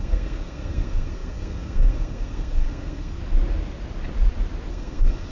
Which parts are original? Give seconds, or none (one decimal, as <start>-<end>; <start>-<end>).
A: 3.2-4.7